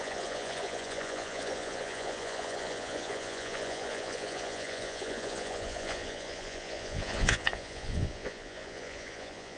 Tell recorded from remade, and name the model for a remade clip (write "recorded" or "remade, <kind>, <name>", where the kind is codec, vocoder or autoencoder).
remade, vocoder, Vocos